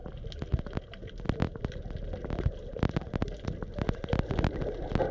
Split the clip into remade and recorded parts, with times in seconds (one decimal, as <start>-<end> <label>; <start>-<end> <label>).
0.0-5.1 recorded